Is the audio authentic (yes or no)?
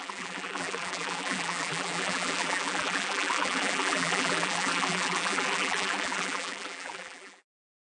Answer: no